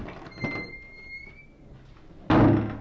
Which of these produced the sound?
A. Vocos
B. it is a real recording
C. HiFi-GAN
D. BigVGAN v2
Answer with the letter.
B